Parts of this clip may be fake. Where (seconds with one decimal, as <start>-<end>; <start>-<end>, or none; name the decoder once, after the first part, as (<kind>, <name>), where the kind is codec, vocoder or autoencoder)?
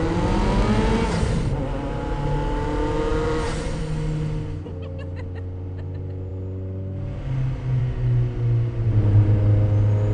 none